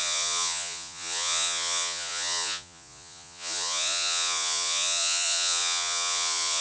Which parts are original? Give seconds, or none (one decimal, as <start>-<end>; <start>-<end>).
none